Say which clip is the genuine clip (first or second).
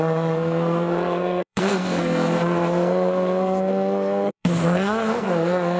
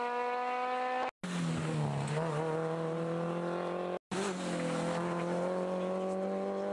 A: second